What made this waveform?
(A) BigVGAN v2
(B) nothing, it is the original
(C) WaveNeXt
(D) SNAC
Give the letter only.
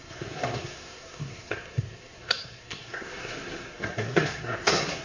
D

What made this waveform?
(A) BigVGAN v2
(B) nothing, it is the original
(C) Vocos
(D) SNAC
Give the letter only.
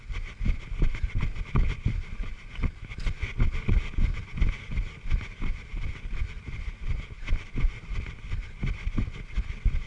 B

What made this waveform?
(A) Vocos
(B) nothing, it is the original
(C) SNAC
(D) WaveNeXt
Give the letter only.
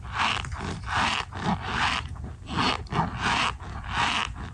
B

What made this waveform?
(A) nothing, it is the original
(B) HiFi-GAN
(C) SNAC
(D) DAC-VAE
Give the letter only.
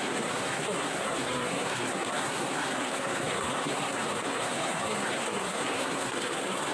C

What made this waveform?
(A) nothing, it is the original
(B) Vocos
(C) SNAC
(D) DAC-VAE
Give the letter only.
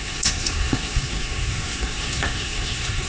C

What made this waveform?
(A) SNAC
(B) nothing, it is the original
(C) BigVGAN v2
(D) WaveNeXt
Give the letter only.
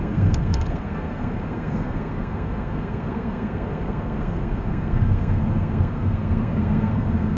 A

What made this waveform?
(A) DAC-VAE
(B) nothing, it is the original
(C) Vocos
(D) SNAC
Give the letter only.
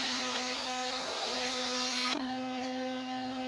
D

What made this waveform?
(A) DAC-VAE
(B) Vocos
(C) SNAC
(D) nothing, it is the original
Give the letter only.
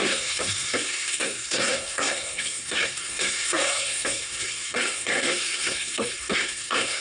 C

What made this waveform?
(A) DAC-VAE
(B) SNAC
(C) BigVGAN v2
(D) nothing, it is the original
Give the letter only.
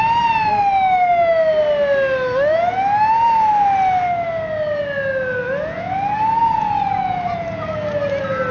D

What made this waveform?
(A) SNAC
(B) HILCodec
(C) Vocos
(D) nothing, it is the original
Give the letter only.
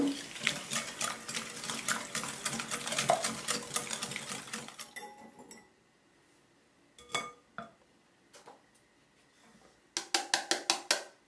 D